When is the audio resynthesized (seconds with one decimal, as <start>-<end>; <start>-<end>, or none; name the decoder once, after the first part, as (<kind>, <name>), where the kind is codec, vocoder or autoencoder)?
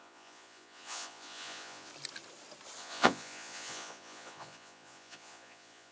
0.0-1.9 (vocoder, Vocos); 2.8-5.9